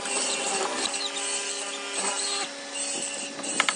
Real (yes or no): yes